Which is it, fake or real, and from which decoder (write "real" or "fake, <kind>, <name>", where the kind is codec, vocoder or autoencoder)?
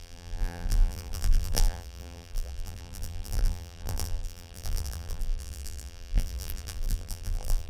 fake, vocoder, BigVGAN v2